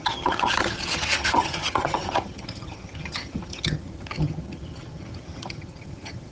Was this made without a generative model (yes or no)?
no